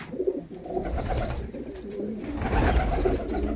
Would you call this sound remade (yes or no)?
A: yes